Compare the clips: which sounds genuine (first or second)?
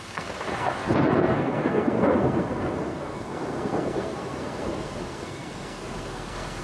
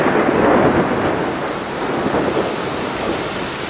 second